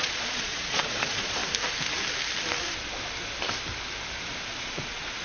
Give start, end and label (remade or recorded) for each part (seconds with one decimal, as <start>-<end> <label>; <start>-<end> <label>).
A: 0.0-1.4 remade; 1.4-4.5 recorded; 4.5-5.2 remade